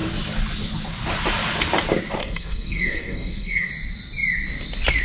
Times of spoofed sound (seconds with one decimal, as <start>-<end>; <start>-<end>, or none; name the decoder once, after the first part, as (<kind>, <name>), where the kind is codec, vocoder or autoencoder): 2.2-3.7 (codec, SNAC)

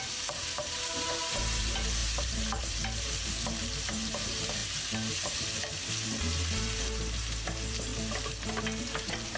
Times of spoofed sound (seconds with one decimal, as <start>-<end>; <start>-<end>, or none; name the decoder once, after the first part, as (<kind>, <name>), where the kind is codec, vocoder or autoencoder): 0.0-4.6 (vocoder, BigVGAN v2); 6.6-7.9; 9.0-9.4

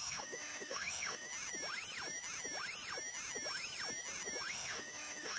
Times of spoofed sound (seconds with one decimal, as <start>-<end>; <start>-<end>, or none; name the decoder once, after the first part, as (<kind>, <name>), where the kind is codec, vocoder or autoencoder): 0.0-1.3 (autoencoder, DAC-VAE); 4.5-5.4

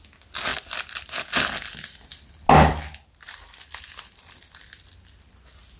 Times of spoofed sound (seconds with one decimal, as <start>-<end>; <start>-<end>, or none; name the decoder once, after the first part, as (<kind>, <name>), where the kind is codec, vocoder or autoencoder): none

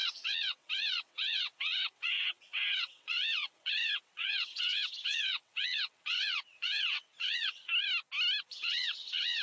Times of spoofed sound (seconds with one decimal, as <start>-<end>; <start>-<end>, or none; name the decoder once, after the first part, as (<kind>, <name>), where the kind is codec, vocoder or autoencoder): 0.0-7.7 (vocoder, WaveNeXt); 8.4-9.4

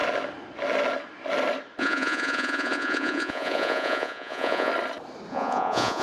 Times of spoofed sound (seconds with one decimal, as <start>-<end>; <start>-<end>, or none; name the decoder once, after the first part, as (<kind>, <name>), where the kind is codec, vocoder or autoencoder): 1.8-4.7 (vocoder, Vocos); 5.3-6.0

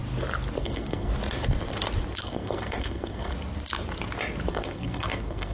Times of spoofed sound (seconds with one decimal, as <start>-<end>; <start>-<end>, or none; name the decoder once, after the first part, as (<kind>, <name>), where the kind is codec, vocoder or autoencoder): 0.6-1.1 (codec, SNAC); 2.2-3.3; 4.5-5.5